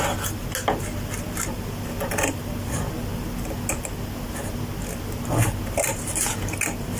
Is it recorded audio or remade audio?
recorded